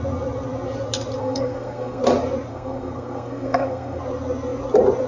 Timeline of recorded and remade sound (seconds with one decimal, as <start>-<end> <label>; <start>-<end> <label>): 0.0-1.2 recorded; 1.2-2.0 remade; 2.0-2.5 recorded; 2.5-4.0 remade; 4.0-5.1 recorded

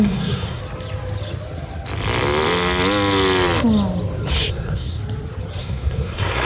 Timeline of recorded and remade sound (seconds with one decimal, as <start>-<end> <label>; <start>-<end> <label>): 0.0-0.6 remade; 0.6-4.5 recorded; 4.5-5.0 remade; 5.0-5.6 recorded; 5.6-6.5 remade

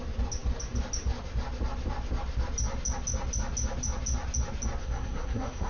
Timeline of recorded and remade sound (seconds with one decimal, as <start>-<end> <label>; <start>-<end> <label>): 0.0-4.8 recorded; 4.8-5.7 remade

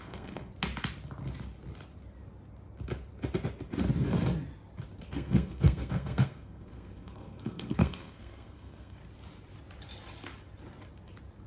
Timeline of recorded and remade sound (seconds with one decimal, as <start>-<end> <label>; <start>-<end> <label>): 0.0-0.5 remade; 0.5-5.1 recorded; 5.1-9.0 remade; 9.0-11.5 recorded

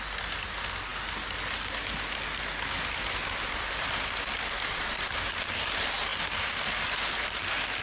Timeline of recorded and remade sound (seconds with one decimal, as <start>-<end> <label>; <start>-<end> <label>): 0.0-7.8 recorded